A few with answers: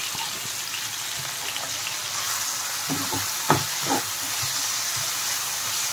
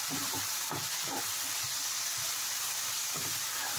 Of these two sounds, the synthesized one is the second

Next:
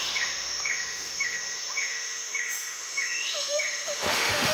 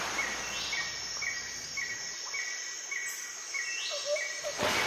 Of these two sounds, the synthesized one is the first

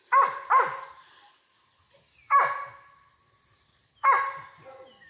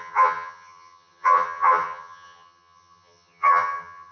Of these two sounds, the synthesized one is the second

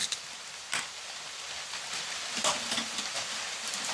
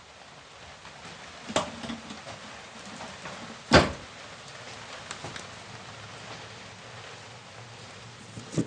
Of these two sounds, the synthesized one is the first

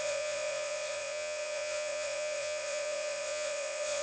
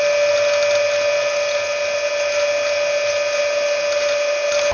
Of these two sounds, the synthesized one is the first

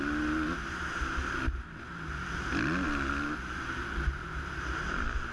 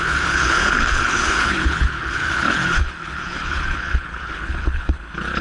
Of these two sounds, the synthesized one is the second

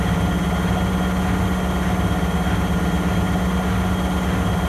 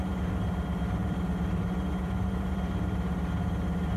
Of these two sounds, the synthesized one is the second